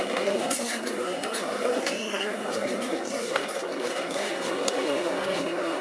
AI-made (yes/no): yes